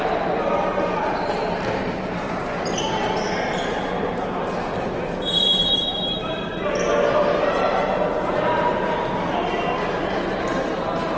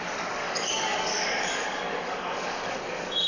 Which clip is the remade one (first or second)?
second